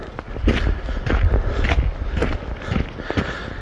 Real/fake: real